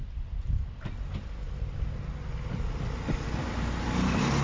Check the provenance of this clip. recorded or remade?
recorded